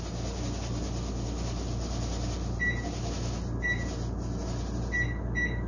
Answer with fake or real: real